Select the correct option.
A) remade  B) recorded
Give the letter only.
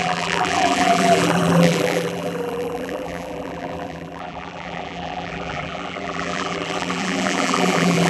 A